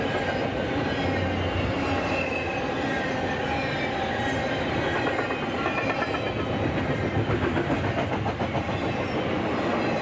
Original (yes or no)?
yes